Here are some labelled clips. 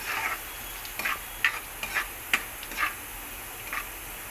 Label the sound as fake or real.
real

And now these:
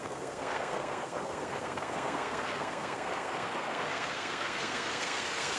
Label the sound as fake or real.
fake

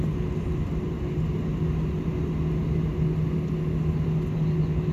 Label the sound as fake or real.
real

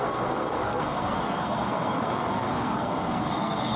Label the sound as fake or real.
fake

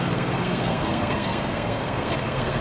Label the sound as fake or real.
fake